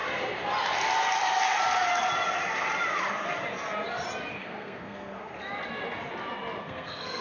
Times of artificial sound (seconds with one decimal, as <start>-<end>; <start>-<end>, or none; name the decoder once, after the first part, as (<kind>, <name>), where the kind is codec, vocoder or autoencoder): 4.3-5.3 (codec, SNAC); 6.6-7.2